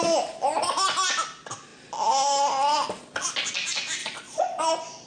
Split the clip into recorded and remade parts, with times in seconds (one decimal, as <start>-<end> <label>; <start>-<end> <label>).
0.0-4.0 recorded; 4.0-4.6 remade; 4.6-5.1 recorded